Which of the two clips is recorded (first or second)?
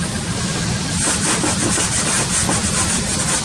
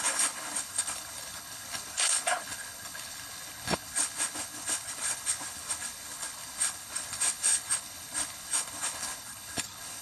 first